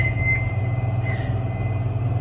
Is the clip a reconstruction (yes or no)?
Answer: no